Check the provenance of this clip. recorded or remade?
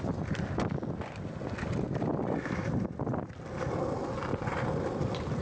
recorded